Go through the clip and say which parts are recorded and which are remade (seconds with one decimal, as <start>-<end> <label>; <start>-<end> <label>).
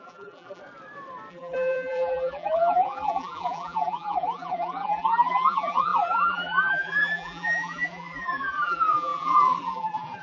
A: 0.0-0.6 remade; 0.6-1.3 recorded; 1.3-10.2 remade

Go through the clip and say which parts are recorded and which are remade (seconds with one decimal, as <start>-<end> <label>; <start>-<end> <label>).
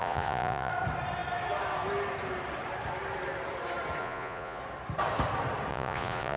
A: 0.0-0.7 remade; 0.7-4.0 recorded; 4.0-4.6 remade; 4.6-5.7 recorded; 5.7-6.4 remade